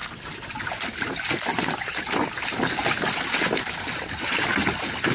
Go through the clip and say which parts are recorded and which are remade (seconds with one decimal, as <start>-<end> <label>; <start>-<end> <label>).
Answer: 0.0-1.5 recorded; 1.5-2.3 remade; 2.3-2.8 recorded; 2.8-4.5 remade; 4.5-5.1 recorded